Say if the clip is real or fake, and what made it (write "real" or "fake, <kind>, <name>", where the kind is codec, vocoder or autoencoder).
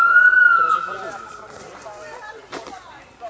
fake, vocoder, BigVGAN v2